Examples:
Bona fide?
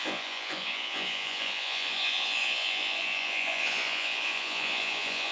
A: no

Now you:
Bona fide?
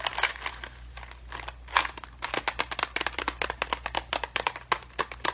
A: yes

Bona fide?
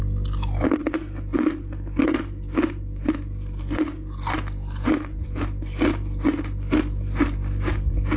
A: yes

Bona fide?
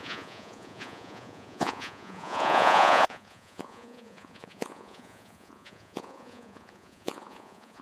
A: no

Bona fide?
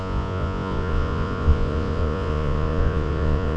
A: no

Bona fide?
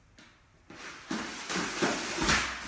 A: yes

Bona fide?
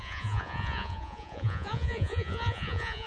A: no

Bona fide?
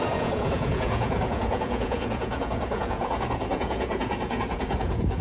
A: no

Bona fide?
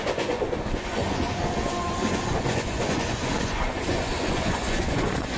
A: no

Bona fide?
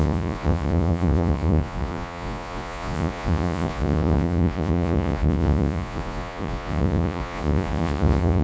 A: no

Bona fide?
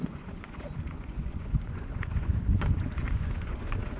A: no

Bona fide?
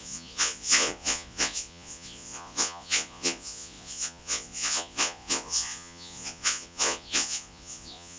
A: no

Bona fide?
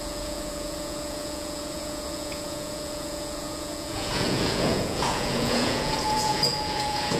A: no